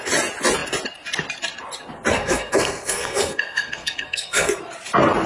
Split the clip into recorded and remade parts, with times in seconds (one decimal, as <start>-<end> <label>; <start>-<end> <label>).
0.0-2.1 recorded; 2.1-4.6 remade; 4.6-5.3 recorded